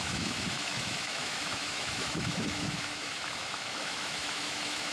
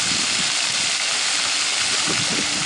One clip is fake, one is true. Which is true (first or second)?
second